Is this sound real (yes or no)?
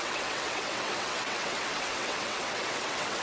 no